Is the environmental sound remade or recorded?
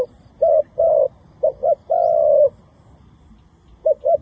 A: recorded